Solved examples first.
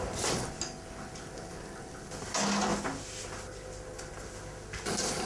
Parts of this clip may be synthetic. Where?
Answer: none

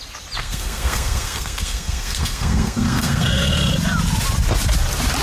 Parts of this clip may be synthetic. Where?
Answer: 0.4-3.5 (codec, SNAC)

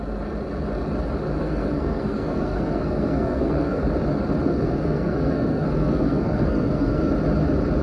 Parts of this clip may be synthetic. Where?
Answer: 1.4-3.8 (codec, SNAC); 4.5-7.1

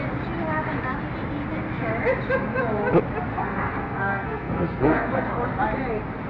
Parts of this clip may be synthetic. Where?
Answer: 3.3-5.3 (codec, SNAC)

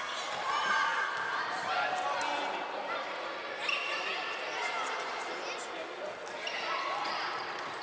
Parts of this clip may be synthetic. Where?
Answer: none

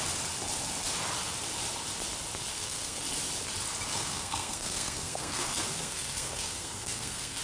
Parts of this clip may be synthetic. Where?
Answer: 2.5-3.0 (codec, SNAC); 3.9-7.4